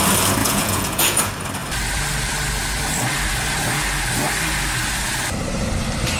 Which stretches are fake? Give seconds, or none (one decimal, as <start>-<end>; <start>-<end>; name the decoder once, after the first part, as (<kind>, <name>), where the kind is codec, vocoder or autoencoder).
0.4-1.2 (vocoder, Vocos)